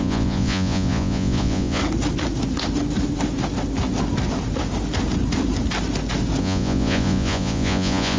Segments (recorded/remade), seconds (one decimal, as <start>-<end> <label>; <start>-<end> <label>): 0.0-1.8 remade; 1.8-6.4 recorded; 6.4-8.2 remade

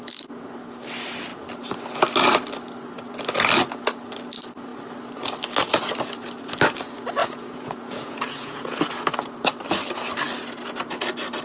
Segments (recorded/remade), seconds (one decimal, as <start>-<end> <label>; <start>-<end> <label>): 0.0-7.2 recorded; 7.2-8.8 remade; 8.8-11.4 recorded

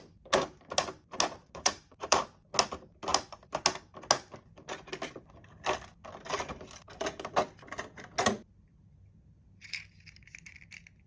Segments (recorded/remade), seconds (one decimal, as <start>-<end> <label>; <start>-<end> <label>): 0.0-1.4 recorded; 1.4-2.2 remade; 2.2-11.1 recorded

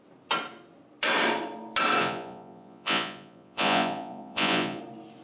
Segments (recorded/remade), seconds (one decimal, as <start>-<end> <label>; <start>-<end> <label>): 0.0-2.0 recorded; 2.0-4.8 remade; 4.8-5.2 recorded